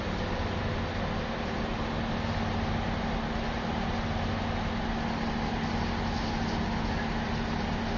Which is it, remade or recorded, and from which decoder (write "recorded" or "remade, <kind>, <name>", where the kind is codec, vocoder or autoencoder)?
recorded